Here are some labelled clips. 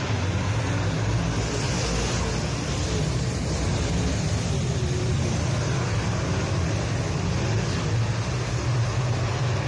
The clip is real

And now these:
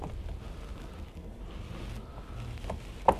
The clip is real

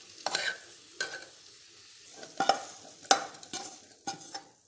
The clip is real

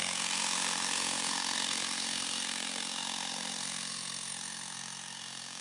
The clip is fake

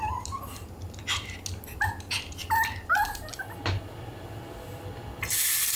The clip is real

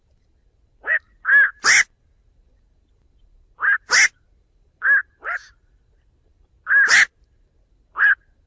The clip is real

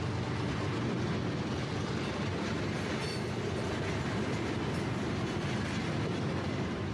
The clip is real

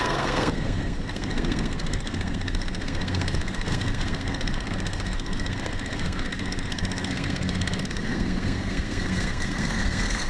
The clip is fake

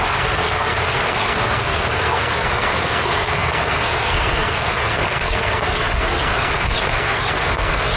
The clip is fake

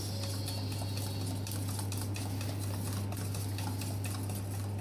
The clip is real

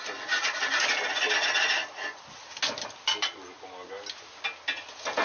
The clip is real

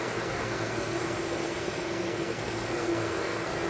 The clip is fake